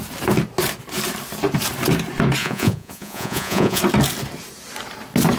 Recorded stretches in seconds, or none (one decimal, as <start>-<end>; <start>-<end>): 0.0-2.4; 3.8-5.4